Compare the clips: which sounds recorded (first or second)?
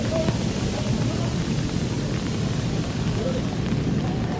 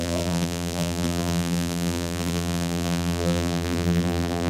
first